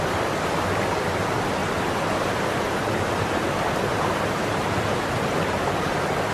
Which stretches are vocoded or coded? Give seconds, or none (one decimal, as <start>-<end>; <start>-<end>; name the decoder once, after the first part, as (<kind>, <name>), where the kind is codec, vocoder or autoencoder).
1.6-5.4 (vocoder, BigVGAN v2)